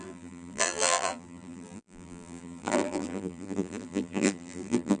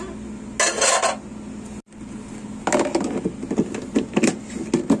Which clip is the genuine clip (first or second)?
second